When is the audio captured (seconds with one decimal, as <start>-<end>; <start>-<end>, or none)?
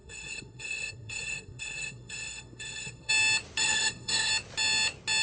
3.1-3.6; 4.3-5.2